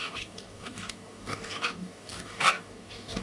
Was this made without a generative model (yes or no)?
no